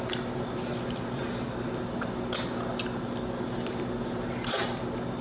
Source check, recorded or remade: recorded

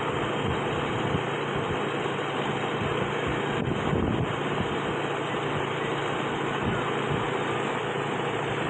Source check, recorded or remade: recorded